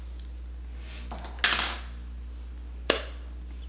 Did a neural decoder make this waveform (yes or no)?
no